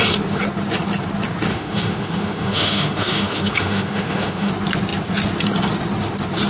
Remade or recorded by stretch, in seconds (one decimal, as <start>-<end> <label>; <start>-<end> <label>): 0.0-1.5 recorded; 1.5-4.5 remade; 4.5-6.5 recorded